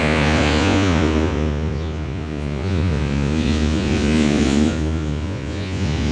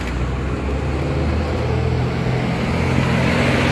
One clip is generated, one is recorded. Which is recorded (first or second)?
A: second